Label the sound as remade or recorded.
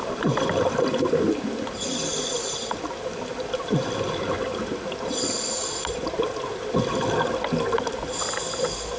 recorded